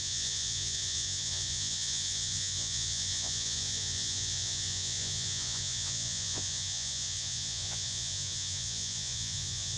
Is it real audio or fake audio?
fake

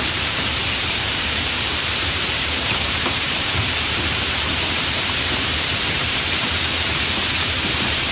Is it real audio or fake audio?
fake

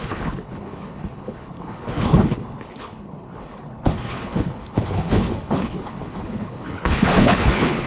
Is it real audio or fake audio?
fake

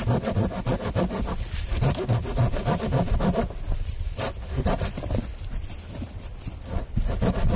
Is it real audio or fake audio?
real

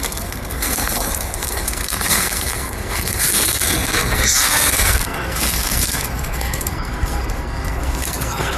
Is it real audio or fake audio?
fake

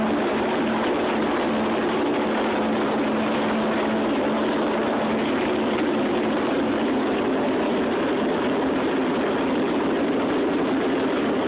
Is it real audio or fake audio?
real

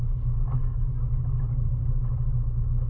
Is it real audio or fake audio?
real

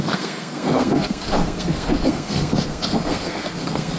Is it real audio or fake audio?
fake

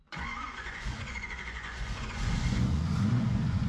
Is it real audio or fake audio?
fake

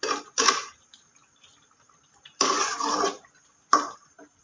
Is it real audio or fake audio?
fake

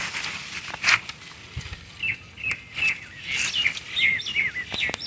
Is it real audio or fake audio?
real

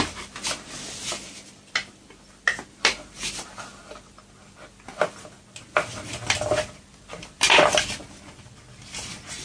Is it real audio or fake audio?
real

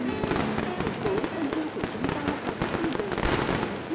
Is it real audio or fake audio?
real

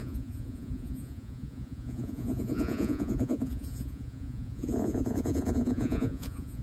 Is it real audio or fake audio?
fake